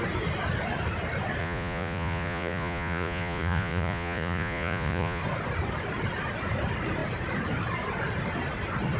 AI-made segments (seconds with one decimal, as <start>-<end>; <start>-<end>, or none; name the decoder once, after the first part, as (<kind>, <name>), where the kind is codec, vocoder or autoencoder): 1.4-5.2 (vocoder, Vocos)